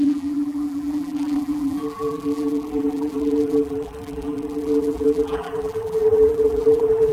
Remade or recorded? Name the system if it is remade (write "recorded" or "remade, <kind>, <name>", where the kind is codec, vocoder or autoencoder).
remade, vocoder, BigVGAN v2